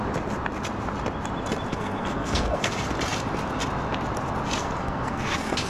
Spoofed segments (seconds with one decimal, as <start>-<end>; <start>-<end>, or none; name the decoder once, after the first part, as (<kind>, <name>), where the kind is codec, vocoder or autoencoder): 1.7-2.7 (codec, SNAC); 4.6-5.7

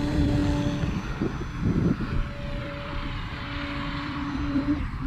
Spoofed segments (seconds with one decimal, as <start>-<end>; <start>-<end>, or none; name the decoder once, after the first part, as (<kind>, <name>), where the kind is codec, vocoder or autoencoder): 0.0-0.4 (vocoder, BigVGAN v2); 2.6-3.3; 3.9-5.1

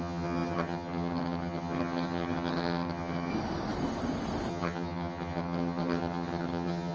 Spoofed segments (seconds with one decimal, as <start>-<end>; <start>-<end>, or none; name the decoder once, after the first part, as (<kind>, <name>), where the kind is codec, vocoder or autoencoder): 0.0-3.3 (vocoder, HiFi-GAN); 4.5-6.9

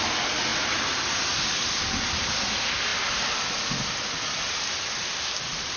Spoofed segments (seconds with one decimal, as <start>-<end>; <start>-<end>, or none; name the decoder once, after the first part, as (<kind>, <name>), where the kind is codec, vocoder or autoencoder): none

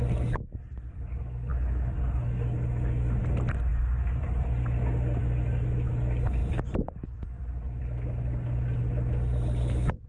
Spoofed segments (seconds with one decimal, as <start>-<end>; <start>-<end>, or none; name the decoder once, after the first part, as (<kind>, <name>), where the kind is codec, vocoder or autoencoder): 3.7-5.2 (vocoder, BigVGAN v2); 6.4-7.8

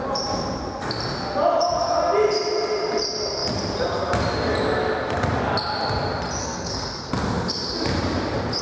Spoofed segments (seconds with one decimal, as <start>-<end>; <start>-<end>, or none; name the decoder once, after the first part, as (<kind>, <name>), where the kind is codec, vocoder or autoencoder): 6.4-7.1 (codec, SNAC)

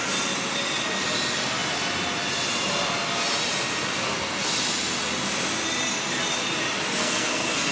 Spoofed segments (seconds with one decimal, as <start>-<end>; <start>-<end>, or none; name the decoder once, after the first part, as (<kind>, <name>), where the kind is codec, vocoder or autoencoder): 7.0-7.7 (codec, SNAC)

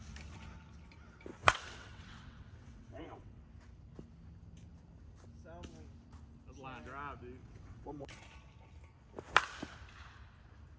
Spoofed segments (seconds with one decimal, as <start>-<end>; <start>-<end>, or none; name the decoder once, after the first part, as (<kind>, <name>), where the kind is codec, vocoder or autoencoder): 1.4-3.4 (vocoder, WaveNeXt); 7.4-8.2